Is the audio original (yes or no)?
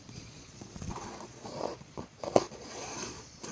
no